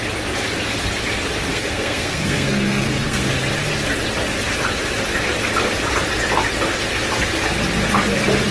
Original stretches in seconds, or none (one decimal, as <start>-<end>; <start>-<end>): 0.0-1.5; 3.3-8.5